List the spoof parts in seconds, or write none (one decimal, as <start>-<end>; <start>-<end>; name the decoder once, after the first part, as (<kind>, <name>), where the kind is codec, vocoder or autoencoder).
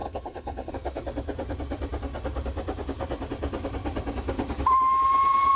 0.0-0.7 (codec, HILCodec)